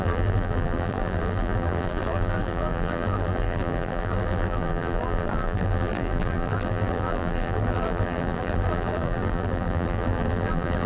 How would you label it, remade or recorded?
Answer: remade